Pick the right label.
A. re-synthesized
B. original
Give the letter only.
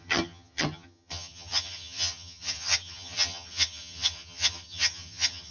A